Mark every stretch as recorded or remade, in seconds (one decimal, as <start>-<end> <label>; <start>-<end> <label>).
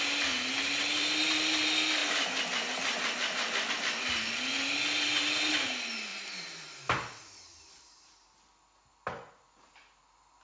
0.0-6.1 recorded; 6.1-8.1 remade; 8.1-10.4 recorded